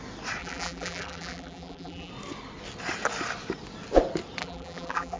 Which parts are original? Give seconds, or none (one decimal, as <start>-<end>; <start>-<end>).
0.0-0.4; 2.1-4.4